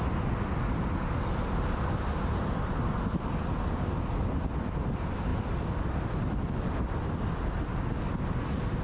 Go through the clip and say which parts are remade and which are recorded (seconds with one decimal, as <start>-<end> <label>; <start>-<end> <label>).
0.0-8.8 recorded